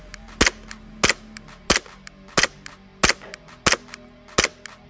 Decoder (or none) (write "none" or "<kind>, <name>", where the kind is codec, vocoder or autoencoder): none